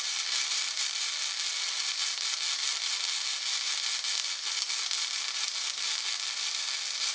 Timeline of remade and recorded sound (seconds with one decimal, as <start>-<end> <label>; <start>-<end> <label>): 0.0-7.1 recorded